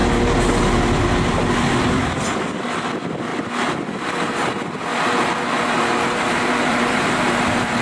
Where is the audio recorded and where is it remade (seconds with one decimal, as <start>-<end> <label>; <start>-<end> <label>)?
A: 0.0-4.9 recorded; 4.9-7.8 remade